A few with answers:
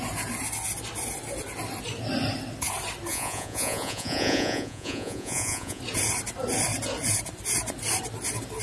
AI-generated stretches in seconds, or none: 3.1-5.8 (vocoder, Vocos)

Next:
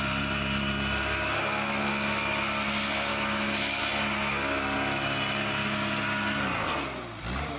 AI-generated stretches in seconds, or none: 3.1-3.8 (autoencoder, DAC-VAE)

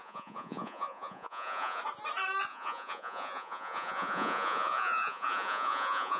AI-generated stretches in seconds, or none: 0.0-1.8 (vocoder, Vocos); 2.5-6.2

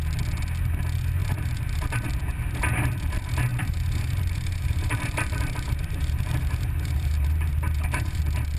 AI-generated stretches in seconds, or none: 1.2-2.1 (vocoder, BigVGAN v2); 3.5-8.2

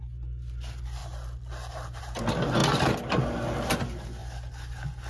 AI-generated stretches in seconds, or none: none